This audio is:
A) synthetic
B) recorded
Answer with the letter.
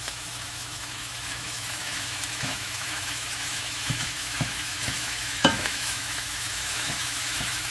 A